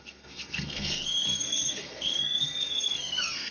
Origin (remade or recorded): remade